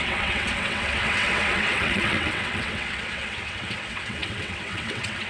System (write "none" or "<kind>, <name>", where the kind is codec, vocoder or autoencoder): vocoder, WaveNeXt